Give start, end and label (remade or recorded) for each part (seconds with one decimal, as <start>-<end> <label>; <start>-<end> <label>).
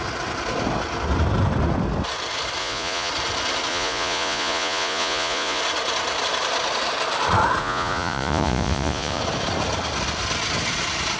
0.0-2.6 recorded; 2.6-3.1 remade; 3.1-3.7 recorded; 3.7-5.6 remade; 5.6-7.6 recorded; 7.6-9.2 remade; 9.2-11.2 recorded